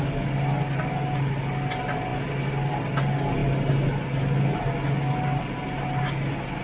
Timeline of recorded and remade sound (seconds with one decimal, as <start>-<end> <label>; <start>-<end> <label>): 0.0-6.6 recorded